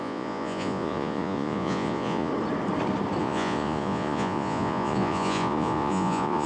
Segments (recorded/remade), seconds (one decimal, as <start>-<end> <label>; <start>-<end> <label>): 0.0-2.3 remade; 2.3-3.2 recorded; 3.2-6.5 remade